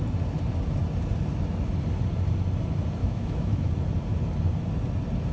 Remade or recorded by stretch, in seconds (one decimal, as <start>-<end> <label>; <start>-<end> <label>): 0.0-3.0 recorded; 3.0-3.7 remade; 3.7-5.3 recorded